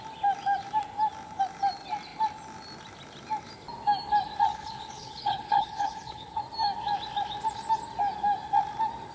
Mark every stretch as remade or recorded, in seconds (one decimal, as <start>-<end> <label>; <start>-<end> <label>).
0.0-4.5 recorded; 4.5-6.4 remade; 6.4-9.1 recorded